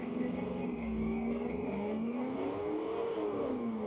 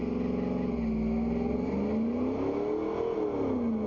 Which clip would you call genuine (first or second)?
second